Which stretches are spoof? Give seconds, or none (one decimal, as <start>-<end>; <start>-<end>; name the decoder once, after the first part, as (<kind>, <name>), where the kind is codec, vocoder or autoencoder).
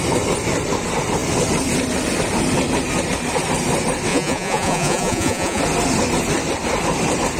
4.1-5.6 (vocoder, Vocos)